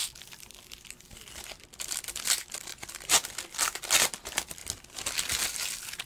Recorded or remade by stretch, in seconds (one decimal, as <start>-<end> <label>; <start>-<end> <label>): 0.0-6.1 recorded